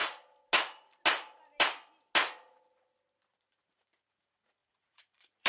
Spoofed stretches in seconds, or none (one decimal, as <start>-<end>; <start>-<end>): 3.3-5.5